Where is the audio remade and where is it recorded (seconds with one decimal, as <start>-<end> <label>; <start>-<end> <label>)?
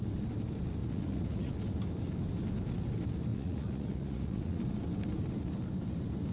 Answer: 0.0-0.8 recorded; 0.8-1.5 remade; 1.5-3.3 recorded; 3.3-4.6 remade; 4.6-6.3 recorded